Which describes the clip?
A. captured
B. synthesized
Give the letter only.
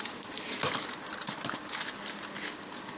A